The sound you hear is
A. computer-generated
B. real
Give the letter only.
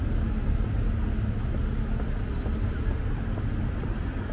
B